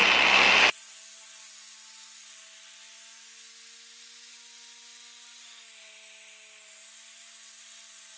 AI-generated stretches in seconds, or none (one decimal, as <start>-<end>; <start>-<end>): none